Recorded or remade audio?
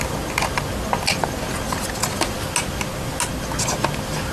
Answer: recorded